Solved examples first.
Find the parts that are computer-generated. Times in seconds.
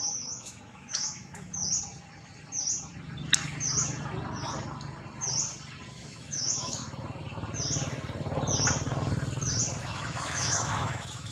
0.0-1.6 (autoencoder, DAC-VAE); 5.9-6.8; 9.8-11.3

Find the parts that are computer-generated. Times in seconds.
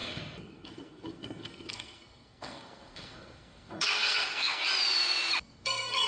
0.0-4.7 (codec, SNAC); 5.4-6.1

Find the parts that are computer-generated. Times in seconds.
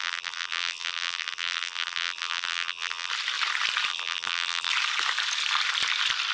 0.0-3.1 (vocoder, BigVGAN v2); 3.9-4.7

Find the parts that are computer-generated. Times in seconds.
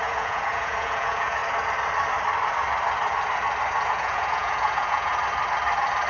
0.0-1.4 (vocoder, Vocos); 3.9-5.1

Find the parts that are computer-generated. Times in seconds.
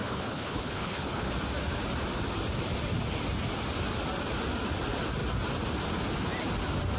0.0-1.3 (codec, HILCodec)